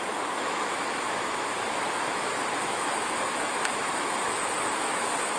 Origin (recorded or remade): remade